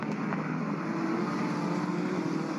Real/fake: real